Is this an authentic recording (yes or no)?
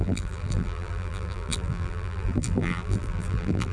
no